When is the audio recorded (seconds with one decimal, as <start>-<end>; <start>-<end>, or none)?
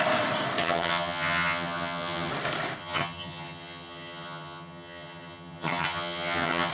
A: 0.0-0.6; 2.3-2.8